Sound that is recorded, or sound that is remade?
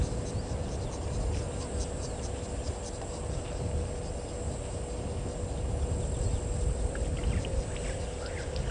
recorded